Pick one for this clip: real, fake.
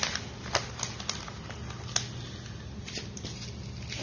real